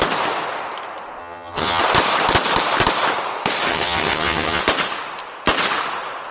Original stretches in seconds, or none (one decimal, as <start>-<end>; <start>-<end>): 0.0-1.2; 1.8-3.7; 4.6-6.3